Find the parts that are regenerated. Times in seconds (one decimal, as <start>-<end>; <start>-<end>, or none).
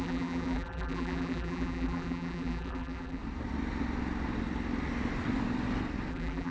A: 0.0-3.2; 6.1-6.5